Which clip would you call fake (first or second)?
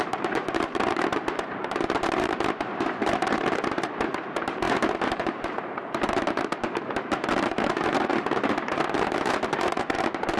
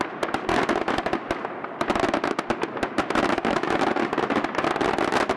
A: first